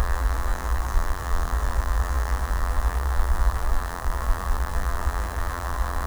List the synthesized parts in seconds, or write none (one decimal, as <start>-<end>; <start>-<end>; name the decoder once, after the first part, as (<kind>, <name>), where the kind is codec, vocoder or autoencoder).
0.0-6.1 (vocoder, BigVGAN v2)